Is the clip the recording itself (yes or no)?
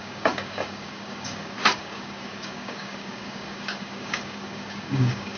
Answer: no